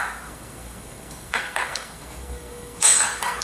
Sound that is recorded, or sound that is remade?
remade